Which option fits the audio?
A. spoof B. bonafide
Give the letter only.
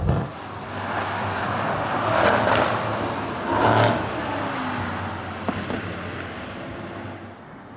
B